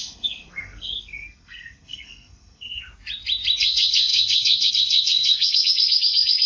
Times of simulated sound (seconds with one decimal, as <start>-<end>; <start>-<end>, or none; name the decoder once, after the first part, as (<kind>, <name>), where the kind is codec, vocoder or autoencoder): 0.0-2.8 (codec, SNAC); 3.6-6.5